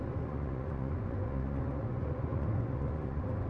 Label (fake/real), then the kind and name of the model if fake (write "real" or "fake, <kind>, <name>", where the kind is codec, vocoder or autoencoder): fake, vocoder, Vocos